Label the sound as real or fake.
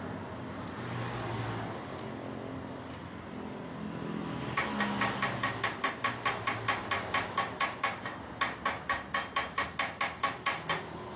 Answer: real